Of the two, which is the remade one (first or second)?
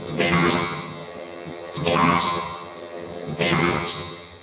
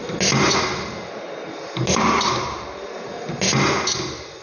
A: first